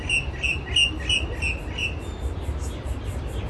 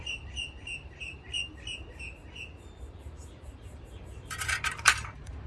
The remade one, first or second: second